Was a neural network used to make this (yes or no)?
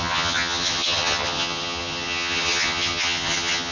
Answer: yes